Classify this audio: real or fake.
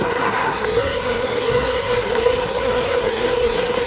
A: fake